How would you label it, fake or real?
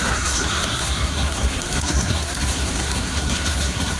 fake